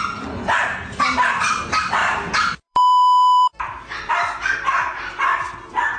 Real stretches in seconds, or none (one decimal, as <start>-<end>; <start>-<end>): 0.0-2.0; 4.1-6.0